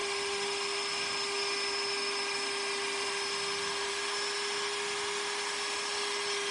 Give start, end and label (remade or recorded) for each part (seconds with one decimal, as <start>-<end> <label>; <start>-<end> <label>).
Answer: 0.0-6.5 recorded

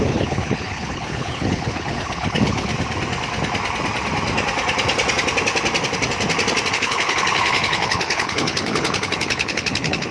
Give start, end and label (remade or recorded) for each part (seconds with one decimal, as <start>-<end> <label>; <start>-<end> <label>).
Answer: 0.0-2.7 remade; 2.7-6.7 recorded; 6.7-10.1 remade

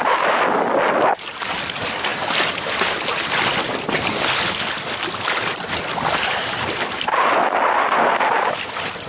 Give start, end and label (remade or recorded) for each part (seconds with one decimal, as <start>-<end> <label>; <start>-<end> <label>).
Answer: 0.0-9.1 recorded

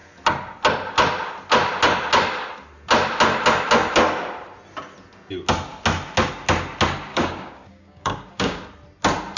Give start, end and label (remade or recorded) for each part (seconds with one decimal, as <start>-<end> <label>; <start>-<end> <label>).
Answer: 0.0-7.1 recorded; 7.1-8.6 remade; 8.6-9.4 recorded

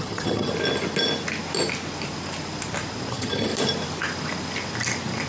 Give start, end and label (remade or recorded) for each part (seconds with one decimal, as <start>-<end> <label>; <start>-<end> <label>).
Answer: 0.0-0.5 remade; 0.5-3.1 recorded; 3.1-3.5 remade; 3.5-5.3 recorded

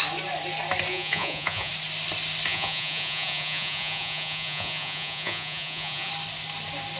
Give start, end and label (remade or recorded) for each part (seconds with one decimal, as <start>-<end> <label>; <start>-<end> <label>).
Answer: 0.0-0.9 recorded; 0.9-1.7 remade; 1.7-2.5 recorded; 2.5-6.1 remade; 6.1-7.0 recorded

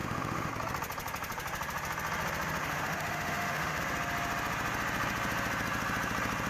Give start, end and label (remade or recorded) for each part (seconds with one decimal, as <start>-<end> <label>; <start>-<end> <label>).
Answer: 0.0-0.5 remade; 0.5-2.6 recorded; 2.6-3.8 remade; 3.8-6.5 recorded

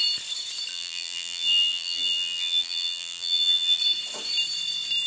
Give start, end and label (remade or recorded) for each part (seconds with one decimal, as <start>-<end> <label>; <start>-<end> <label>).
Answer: 0.0-0.7 recorded; 0.7-3.8 remade; 3.8-5.1 recorded